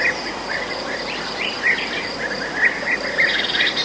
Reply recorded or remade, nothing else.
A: remade